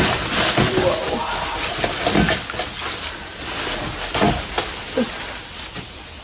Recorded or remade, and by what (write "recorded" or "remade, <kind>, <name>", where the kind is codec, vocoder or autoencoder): recorded